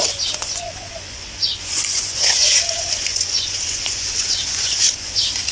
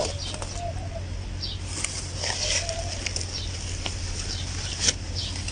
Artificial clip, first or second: first